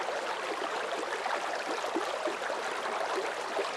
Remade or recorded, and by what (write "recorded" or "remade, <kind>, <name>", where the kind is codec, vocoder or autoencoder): recorded